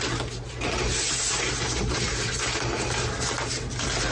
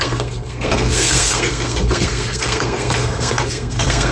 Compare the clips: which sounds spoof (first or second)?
second